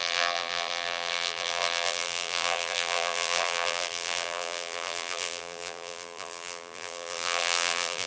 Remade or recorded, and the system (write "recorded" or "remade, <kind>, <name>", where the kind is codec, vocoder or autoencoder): remade, vocoder, BigVGAN v2